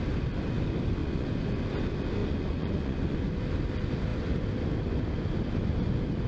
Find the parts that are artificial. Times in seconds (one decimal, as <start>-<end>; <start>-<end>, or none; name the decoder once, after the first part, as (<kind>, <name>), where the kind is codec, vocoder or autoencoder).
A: 1.0-1.6 (vocoder, Vocos); 2.2-3.4